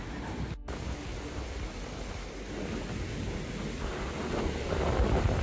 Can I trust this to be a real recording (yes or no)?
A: yes